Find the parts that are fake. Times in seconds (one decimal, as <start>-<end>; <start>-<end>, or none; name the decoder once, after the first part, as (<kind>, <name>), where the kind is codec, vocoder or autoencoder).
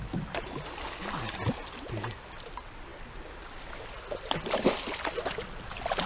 none